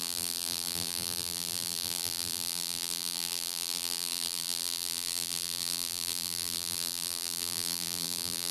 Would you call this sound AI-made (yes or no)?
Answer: yes